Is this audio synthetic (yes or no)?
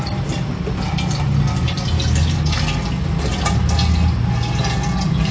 no